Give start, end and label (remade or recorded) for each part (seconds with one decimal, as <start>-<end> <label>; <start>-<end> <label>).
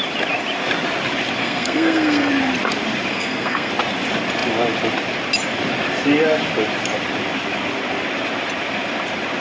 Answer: 0.0-1.4 recorded; 1.4-2.3 remade; 2.3-3.1 recorded; 3.1-3.7 remade; 3.7-9.4 recorded